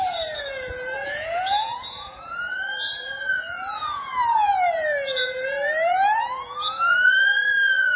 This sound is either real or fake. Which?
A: fake